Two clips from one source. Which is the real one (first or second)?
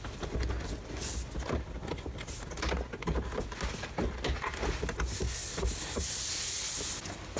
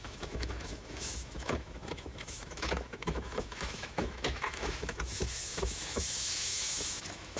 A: first